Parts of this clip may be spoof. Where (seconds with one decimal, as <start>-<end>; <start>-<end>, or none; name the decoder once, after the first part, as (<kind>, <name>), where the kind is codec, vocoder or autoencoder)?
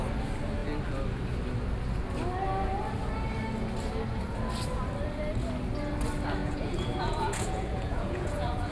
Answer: 6.4-8.7 (vocoder, Vocos)